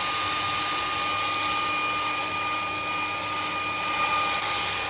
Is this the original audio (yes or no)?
yes